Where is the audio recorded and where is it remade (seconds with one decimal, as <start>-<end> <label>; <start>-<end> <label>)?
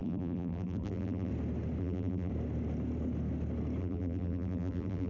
0.0-1.3 remade; 1.3-1.8 recorded; 1.8-2.3 remade; 2.3-3.8 recorded; 3.8-5.1 remade